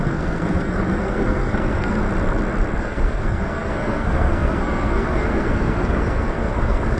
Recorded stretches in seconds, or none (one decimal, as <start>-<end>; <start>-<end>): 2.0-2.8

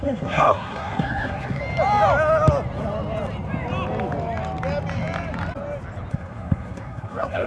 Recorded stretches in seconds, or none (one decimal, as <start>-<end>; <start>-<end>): 1.6-6.1

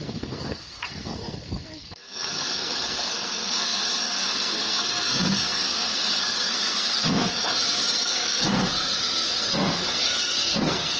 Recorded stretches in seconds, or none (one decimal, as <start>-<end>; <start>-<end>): none

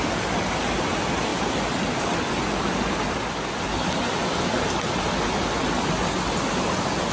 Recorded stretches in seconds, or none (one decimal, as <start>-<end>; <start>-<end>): 0.0-7.1

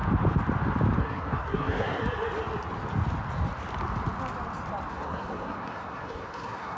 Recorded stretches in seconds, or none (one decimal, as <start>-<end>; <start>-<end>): 0.0-1.0; 2.0-4.9

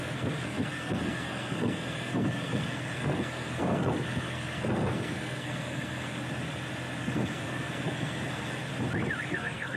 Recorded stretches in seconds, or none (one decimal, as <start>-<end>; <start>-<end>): 6.2-7.0; 8.7-9.2

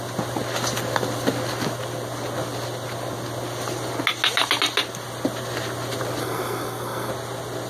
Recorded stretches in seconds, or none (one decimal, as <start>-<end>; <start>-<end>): 0.0-6.2; 7.1-7.7

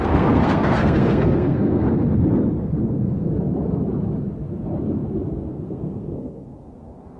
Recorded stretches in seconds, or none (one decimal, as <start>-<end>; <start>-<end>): 1.8-2.8; 3.3-5.5